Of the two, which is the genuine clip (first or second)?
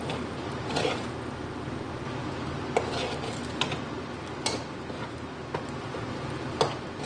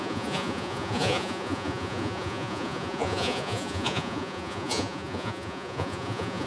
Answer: first